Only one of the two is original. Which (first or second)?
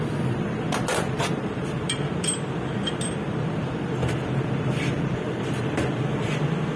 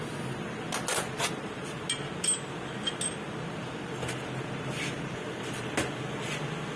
second